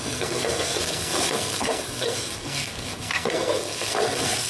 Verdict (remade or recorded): remade